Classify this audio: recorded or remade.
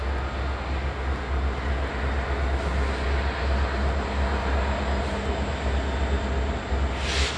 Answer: recorded